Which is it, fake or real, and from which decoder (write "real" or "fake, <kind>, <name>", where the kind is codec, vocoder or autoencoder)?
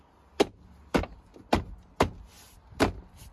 real